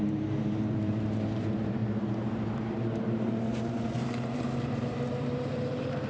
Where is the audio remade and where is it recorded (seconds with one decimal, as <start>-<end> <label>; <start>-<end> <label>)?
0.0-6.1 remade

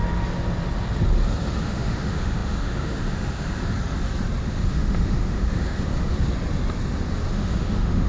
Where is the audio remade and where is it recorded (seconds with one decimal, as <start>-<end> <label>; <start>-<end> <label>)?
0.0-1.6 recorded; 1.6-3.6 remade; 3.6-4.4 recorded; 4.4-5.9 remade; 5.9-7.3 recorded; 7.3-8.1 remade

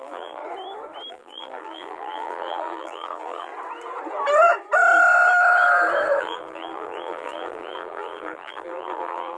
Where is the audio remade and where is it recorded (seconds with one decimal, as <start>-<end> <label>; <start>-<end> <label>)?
0.0-0.4 remade; 0.4-1.1 recorded; 1.1-3.5 remade; 3.5-6.2 recorded; 6.2-9.4 remade